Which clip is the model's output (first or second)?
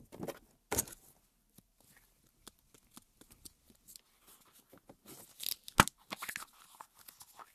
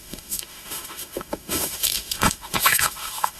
second